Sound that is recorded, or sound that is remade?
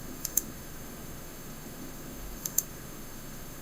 remade